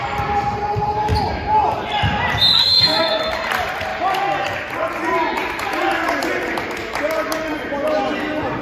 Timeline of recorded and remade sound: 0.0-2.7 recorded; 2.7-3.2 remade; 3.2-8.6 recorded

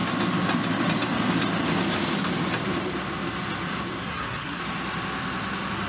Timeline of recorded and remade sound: 0.0-4.0 recorded; 4.0-4.6 remade; 4.6-5.9 recorded

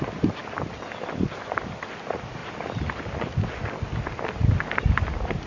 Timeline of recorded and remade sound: 0.0-5.5 recorded

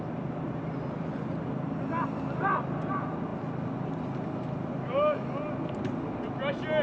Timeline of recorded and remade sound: 0.0-6.8 recorded

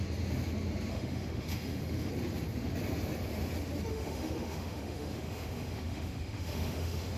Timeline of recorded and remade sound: 0.0-0.9 recorded; 0.9-2.1 remade; 2.1-3.9 recorded; 3.9-7.2 remade

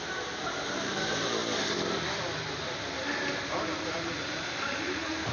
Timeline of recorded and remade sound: 0.0-1.4 remade; 1.4-3.8 recorded; 3.8-5.3 remade

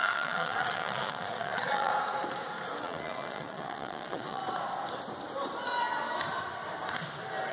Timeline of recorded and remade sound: 0.0-1.9 remade; 1.9-2.8 recorded; 2.8-4.4 remade; 4.4-7.5 recorded

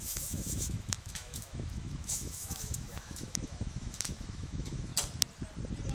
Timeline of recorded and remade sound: 0.0-4.9 remade; 4.9-5.9 recorded